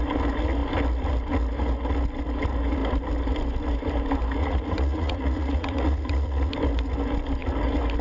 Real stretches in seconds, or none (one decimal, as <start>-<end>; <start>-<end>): 0.0-4.4; 6.5-8.0

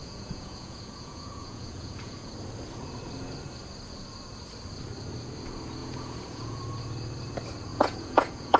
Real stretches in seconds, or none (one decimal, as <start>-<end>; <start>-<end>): 2.3-5.8; 6.6-7.7

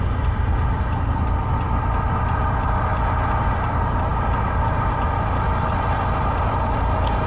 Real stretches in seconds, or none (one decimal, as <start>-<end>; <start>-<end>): 0.0-7.3

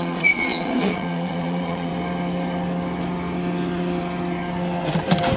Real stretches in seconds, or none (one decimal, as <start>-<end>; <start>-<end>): 1.9-5.4

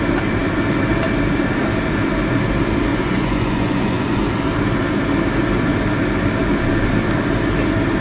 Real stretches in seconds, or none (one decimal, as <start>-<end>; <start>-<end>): 0.0-2.9; 4.2-8.0

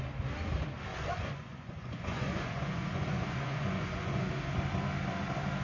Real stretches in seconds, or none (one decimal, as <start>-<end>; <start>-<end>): 0.0-0.9; 4.3-5.6